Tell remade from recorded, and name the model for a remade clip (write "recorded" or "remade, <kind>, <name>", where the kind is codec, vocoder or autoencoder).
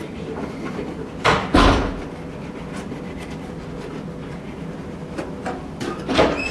recorded